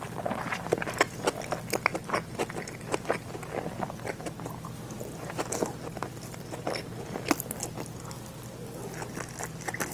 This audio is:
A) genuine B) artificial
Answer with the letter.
A